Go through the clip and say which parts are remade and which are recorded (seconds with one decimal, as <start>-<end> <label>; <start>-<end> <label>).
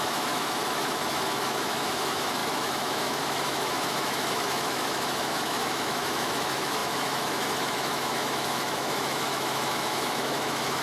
0.0-10.8 remade